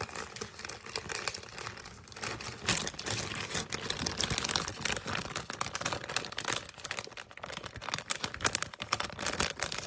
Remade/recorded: recorded